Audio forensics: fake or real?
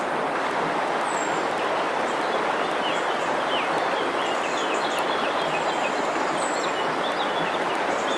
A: real